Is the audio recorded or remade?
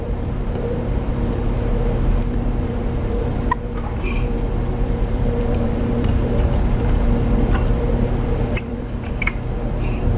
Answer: remade